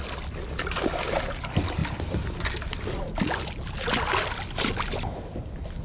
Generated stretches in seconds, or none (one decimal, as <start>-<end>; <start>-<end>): none